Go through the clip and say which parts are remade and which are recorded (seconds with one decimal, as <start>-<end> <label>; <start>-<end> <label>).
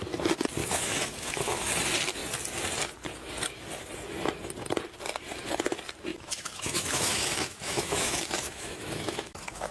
0.0-0.6 recorded; 0.6-1.6 remade; 1.6-6.1 recorded; 6.1-9.7 remade